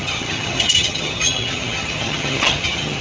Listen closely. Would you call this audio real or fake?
fake